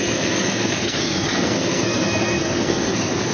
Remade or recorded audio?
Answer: remade